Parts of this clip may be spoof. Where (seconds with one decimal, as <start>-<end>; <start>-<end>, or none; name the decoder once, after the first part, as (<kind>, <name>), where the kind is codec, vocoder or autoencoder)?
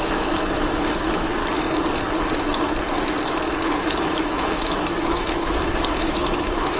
0.0-1.4 (autoencoder, DAC-VAE); 3.8-6.8